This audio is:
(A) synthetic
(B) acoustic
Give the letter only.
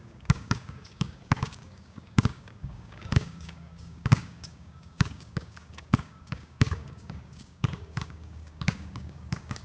A